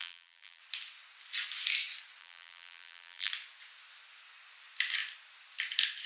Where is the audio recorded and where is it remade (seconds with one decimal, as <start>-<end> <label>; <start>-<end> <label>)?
0.0-0.6 remade; 0.6-2.2 recorded; 2.2-3.3 remade; 3.3-6.1 recorded